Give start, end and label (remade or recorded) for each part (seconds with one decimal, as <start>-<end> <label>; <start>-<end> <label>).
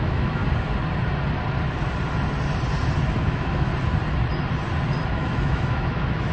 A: 0.0-0.4 remade; 0.4-3.2 recorded; 3.2-3.7 remade; 3.7-5.1 recorded; 5.1-6.3 remade